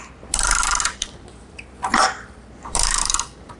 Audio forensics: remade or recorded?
remade